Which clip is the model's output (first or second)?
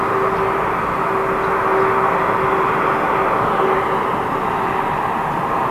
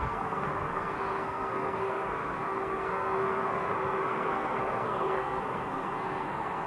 second